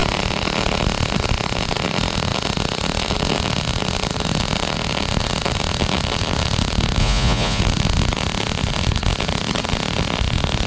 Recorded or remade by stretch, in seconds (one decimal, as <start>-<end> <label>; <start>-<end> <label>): 0.0-7.0 recorded; 7.0-7.6 remade; 7.6-10.7 recorded